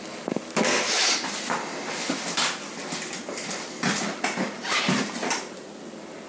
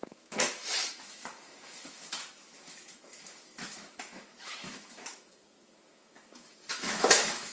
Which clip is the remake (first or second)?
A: second